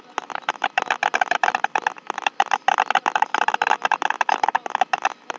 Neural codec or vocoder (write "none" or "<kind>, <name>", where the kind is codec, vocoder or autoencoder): none